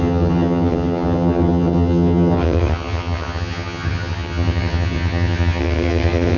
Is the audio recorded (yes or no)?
no